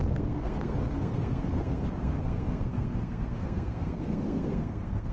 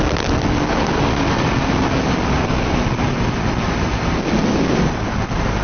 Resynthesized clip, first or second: first